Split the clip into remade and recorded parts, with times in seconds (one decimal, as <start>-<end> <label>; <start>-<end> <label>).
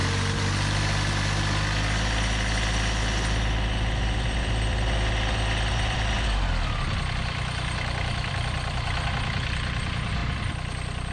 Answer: 0.0-4.4 remade; 4.4-11.1 recorded